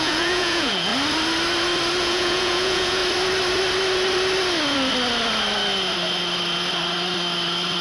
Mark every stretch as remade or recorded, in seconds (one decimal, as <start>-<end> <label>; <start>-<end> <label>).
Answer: 0.0-0.9 remade; 0.9-2.0 recorded; 2.0-3.0 remade; 3.0-7.8 recorded